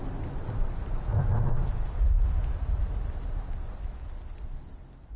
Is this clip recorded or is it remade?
recorded